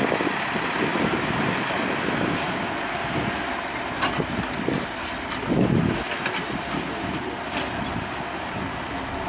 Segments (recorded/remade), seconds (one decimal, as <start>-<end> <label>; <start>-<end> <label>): 0.0-9.3 remade